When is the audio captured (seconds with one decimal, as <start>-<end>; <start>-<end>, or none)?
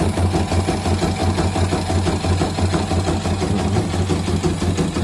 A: 0.0-5.0